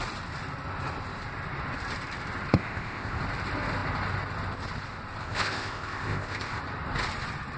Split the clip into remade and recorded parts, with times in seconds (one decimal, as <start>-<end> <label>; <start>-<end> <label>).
0.0-2.5 recorded; 2.5-3.2 remade; 3.2-5.2 recorded; 5.2-6.6 remade; 6.6-7.6 recorded